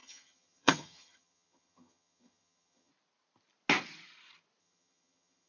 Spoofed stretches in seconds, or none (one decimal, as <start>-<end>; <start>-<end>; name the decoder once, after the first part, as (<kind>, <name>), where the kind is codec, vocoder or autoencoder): 0.0-2.9 (vocoder, HiFi-GAN); 4.6-5.5